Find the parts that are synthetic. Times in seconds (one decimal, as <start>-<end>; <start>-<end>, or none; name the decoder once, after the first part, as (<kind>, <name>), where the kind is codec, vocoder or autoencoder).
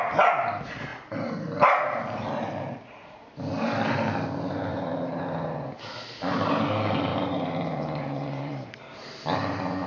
4.7-5.2 (vocoder, BigVGAN v2); 7.1-9.2